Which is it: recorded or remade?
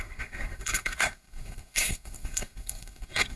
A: remade